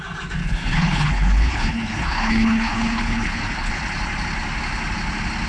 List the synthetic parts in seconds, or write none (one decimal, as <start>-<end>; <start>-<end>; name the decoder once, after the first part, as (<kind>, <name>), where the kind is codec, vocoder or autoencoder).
0.4-3.7 (codec, HILCodec)